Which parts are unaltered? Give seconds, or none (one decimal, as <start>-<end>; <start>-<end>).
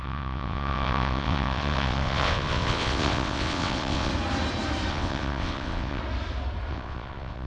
4.1-4.9; 6.0-6.7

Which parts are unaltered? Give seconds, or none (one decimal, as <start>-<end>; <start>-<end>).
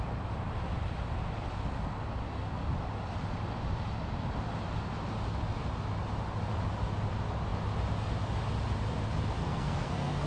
0.0-9.4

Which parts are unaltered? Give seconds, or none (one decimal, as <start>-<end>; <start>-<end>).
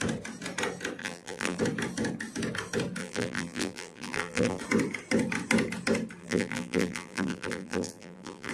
0.0-1.0; 1.6-3.0; 4.6-6.2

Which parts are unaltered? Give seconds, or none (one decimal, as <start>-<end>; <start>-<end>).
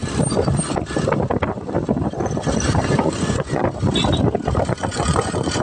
0.0-2.9; 3.6-4.7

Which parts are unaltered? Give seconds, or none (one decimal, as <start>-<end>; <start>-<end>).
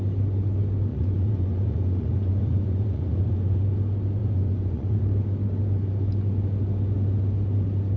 0.0-0.9; 3.6-4.2; 5.0-8.0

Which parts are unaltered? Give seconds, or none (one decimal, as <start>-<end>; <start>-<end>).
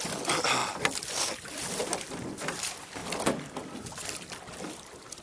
0.0-0.6; 1.1-1.8; 2.6-3.0; 4.6-5.2